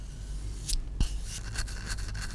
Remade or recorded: recorded